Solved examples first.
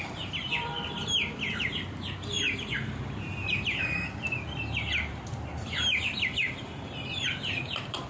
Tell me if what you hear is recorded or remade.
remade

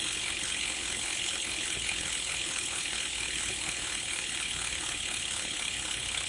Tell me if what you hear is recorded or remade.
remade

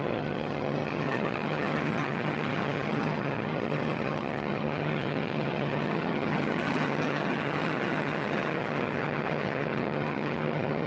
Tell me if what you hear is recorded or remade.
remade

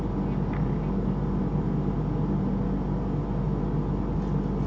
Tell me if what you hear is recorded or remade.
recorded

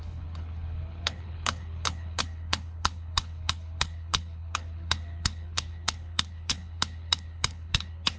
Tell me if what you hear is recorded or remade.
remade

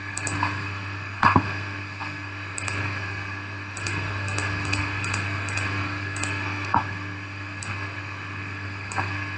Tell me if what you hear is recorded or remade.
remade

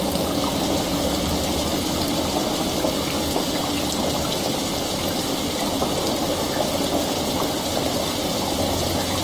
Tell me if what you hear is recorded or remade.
recorded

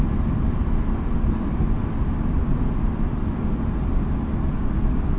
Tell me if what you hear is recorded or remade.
recorded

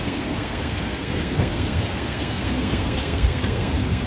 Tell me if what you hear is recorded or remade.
remade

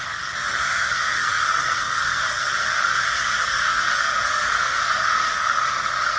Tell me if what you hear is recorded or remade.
remade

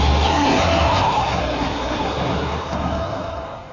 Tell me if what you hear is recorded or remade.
remade